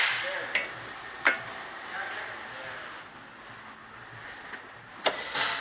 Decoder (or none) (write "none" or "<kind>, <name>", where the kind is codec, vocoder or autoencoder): none